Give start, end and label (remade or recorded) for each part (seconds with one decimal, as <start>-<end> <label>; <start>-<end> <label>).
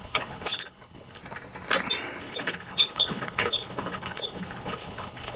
0.0-1.2 remade; 1.2-2.2 recorded; 2.2-5.4 remade